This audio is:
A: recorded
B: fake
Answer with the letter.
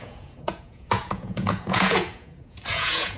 B